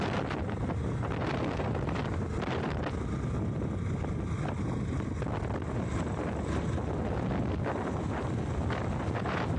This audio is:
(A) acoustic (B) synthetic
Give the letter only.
A